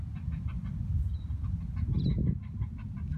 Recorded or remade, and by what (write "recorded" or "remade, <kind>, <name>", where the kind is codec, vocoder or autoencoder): recorded